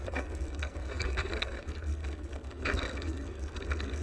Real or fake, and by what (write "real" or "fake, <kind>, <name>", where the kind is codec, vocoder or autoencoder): fake, codec, SNAC